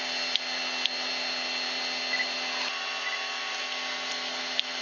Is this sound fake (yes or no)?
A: no